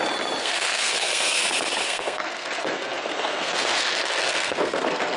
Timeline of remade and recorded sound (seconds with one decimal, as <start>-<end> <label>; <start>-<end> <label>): 0.0-0.4 recorded; 0.4-1.4 remade; 1.4-1.8 recorded; 1.8-5.2 remade